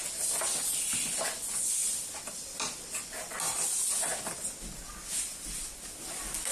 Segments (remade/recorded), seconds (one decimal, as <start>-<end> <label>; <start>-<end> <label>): 0.0-6.5 recorded